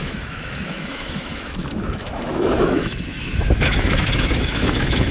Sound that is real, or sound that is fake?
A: fake